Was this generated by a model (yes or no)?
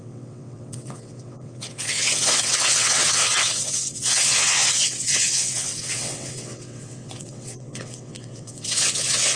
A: yes